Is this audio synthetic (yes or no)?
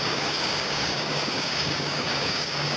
yes